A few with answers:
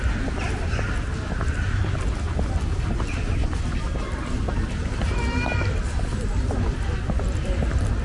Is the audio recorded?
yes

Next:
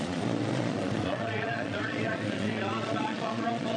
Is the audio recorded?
no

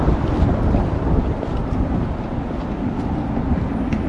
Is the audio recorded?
yes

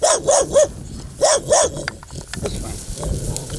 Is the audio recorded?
yes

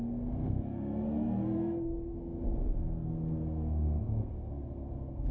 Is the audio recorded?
no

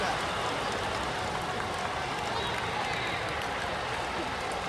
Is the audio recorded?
yes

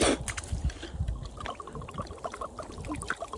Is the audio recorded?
yes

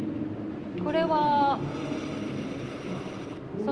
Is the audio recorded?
yes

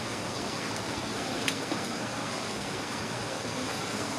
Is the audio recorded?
no